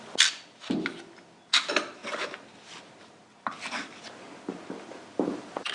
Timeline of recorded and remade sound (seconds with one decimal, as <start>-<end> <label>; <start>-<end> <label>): 0.0-5.7 recorded